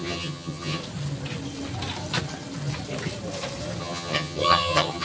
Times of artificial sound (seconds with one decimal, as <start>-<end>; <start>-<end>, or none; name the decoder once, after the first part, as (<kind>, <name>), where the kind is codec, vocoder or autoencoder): 0.0-0.8 (vocoder, HiFi-GAN); 3.8-5.0